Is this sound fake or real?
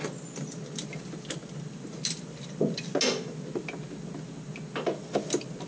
real